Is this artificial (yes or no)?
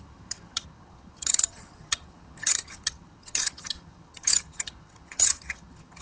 yes